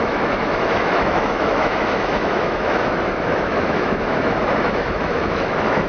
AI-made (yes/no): yes